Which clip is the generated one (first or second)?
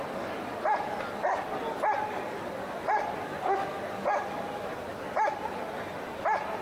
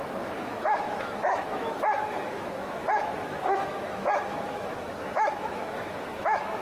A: second